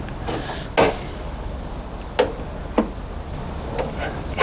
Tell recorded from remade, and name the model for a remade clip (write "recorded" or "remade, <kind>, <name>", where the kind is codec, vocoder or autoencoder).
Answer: recorded